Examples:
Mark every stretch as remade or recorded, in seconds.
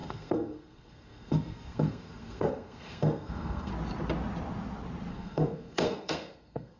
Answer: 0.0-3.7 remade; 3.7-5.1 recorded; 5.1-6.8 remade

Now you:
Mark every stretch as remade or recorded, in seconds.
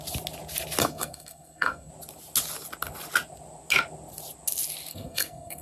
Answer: 0.0-0.8 recorded; 0.8-1.9 remade; 1.9-4.9 recorded; 4.9-5.6 remade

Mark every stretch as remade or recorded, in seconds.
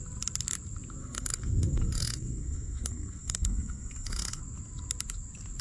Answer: 0.0-1.0 recorded; 1.0-4.4 remade; 4.4-5.6 recorded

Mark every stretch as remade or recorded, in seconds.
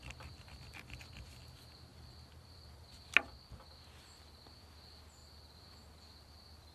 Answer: 0.0-6.7 recorded